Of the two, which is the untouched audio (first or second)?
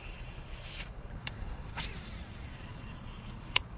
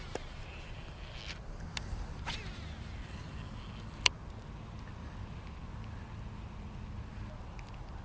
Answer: second